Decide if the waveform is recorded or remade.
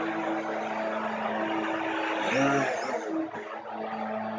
recorded